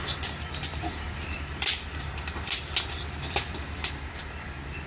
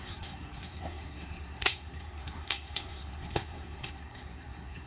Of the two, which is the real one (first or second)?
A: first